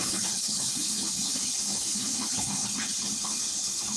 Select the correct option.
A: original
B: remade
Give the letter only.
B